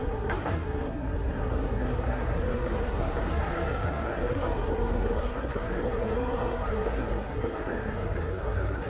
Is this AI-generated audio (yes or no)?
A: yes